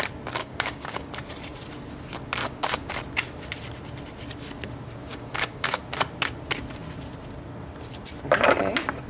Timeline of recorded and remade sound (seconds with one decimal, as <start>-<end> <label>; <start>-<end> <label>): 0.0-0.4 recorded; 0.4-1.1 remade; 1.1-2.4 recorded; 2.4-2.9 remade; 2.9-5.1 recorded; 5.1-5.8 remade; 5.8-9.1 recorded